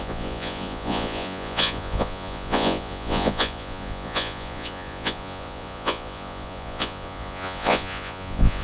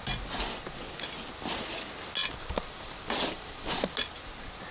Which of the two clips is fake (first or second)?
first